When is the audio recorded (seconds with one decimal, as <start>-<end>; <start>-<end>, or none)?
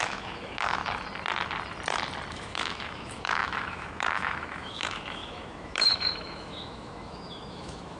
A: 0.8-2.3